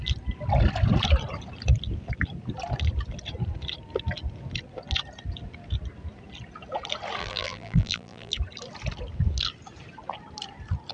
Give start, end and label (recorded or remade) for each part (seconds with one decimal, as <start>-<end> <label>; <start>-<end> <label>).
0.0-7.2 recorded; 7.2-8.3 remade; 8.3-10.9 recorded